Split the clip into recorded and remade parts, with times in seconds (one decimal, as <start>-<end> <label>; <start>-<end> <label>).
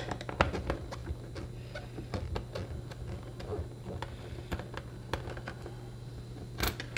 0.0-7.0 recorded